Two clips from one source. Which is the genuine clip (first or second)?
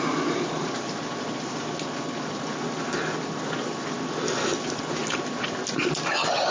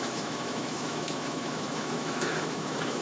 first